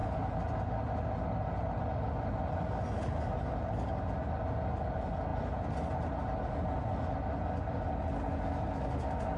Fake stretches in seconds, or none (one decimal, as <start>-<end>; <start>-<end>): none